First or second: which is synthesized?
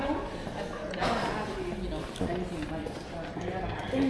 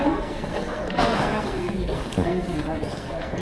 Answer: second